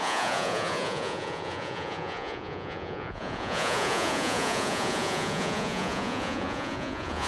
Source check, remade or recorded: remade